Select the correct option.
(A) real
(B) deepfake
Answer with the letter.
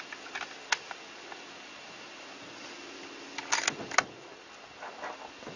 A